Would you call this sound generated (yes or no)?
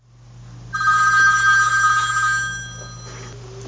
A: no